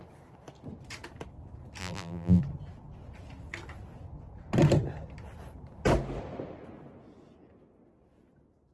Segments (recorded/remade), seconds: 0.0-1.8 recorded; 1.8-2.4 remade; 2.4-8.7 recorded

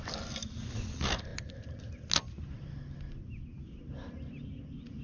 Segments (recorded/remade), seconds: 0.0-5.0 recorded

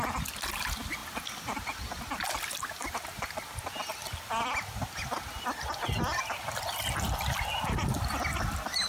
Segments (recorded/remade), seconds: 0.0-8.9 recorded

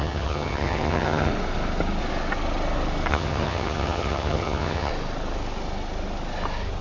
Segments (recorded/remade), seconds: 0.0-1.3 remade; 1.3-3.1 recorded; 3.1-4.9 remade; 4.9-6.8 recorded

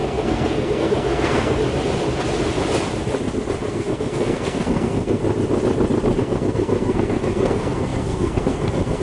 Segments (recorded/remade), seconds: 0.0-1.6 remade; 1.6-3.7 recorded; 3.7-5.2 remade; 5.2-6.2 recorded; 6.2-9.0 remade

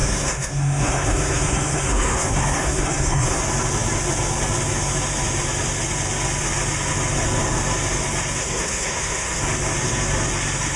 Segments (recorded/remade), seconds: 0.0-3.4 remade; 3.4-8.4 recorded; 8.4-9.4 remade; 9.4-10.8 recorded

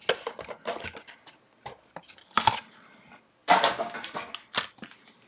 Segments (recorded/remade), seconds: 0.0-5.3 recorded